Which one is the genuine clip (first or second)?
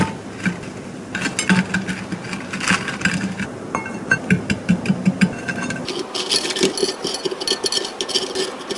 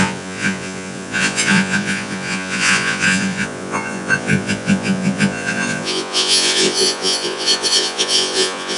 first